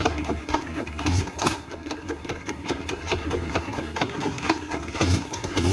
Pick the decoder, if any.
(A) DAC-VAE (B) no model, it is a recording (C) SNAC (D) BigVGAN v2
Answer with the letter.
C